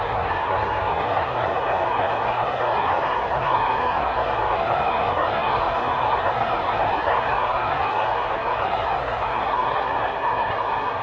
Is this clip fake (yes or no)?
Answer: yes